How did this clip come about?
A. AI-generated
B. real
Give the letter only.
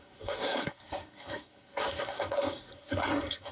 A